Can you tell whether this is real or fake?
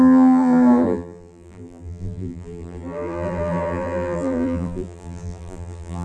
fake